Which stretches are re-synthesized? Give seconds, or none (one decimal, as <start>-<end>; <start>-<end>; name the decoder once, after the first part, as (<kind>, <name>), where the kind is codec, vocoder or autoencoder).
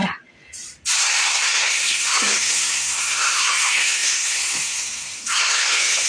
1.0-6.1 (codec, SNAC)